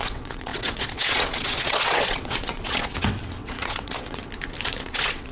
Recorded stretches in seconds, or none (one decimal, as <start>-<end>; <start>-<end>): 4.2-4.8